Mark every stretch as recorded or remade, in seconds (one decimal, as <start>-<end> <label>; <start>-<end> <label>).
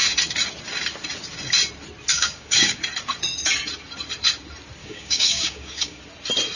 0.0-2.1 recorded; 2.1-2.8 remade; 2.8-4.8 recorded; 4.8-6.0 remade; 6.0-6.6 recorded